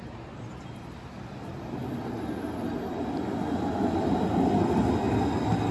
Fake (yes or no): no